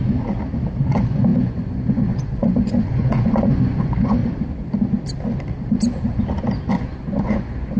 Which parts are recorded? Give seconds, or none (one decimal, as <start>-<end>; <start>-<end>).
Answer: 0.0-0.8; 4.2-6.7